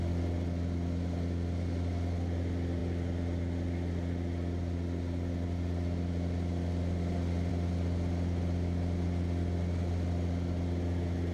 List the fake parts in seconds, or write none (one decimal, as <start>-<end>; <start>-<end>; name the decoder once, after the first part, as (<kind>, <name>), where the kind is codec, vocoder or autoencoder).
none